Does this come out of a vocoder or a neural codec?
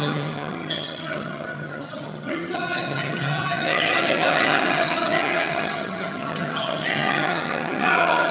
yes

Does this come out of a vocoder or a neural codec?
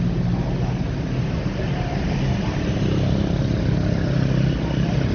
no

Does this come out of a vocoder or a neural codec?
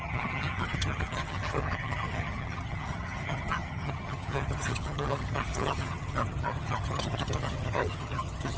yes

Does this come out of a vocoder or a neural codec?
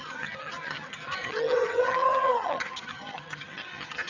yes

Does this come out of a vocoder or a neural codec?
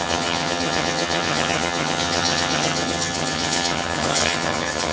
yes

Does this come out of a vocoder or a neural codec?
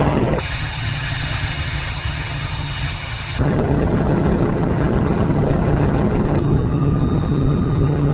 yes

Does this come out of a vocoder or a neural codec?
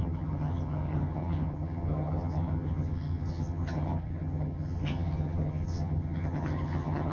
yes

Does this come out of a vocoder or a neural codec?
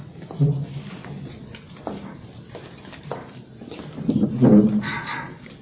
no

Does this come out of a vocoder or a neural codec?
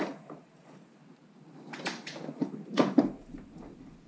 no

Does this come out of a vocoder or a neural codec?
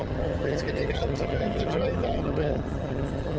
yes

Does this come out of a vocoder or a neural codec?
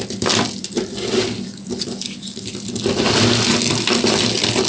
no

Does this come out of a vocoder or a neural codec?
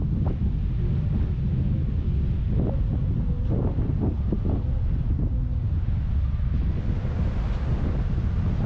no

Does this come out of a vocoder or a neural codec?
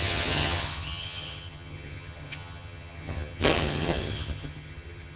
yes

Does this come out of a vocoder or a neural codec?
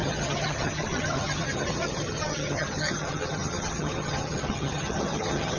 yes